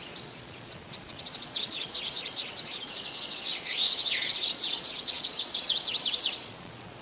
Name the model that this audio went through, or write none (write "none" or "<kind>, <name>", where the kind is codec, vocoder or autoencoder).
vocoder, Vocos